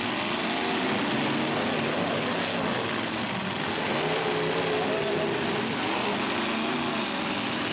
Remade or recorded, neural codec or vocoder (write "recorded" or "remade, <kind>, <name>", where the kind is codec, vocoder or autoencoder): recorded